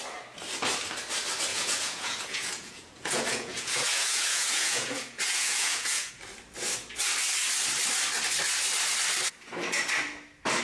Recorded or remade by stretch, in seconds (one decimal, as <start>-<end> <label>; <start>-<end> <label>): 0.0-1.5 recorded; 1.5-6.1 remade; 6.1-10.6 recorded